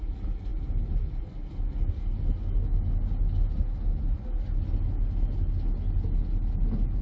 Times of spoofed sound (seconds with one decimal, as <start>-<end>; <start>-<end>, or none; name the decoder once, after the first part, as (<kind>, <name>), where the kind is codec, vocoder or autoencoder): none

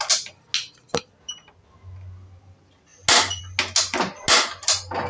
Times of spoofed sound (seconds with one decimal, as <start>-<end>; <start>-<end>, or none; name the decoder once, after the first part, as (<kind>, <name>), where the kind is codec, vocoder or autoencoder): none